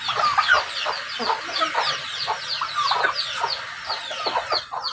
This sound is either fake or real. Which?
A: real